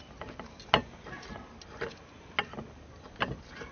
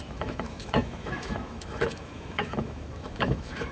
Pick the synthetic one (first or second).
second